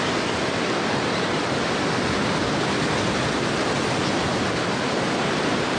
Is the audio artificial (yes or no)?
no